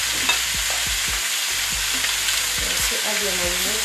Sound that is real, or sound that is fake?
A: real